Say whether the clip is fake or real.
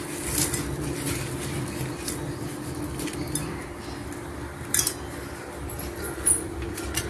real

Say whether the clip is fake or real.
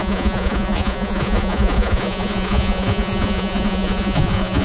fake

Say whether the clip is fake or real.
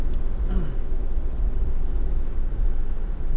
real